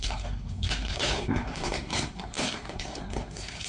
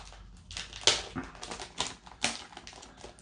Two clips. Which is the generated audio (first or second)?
first